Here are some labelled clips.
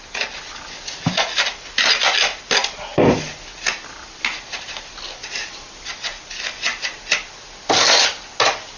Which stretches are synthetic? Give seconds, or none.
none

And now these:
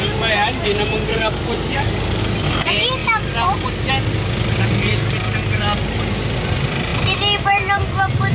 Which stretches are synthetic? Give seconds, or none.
1.1-2.2 (codec, DAC)